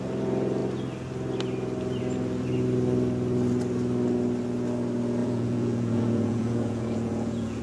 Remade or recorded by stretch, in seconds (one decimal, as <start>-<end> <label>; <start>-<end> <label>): 0.0-5.2 recorded; 5.2-7.6 remade